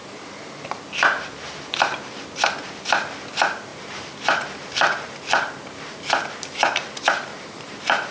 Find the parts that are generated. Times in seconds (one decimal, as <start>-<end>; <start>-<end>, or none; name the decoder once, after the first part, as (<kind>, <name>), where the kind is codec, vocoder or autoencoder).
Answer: 3.7-5.8 (vocoder, BigVGAN v2); 7.3-8.1